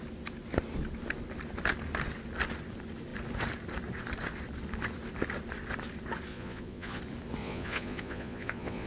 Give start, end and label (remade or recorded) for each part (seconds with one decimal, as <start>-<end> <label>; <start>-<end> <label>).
0.0-6.3 recorded; 6.3-7.0 remade; 7.0-7.4 recorded; 7.4-8.9 remade